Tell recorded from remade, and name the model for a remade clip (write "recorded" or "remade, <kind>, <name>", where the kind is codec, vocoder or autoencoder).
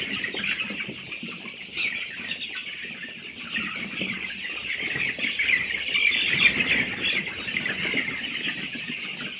recorded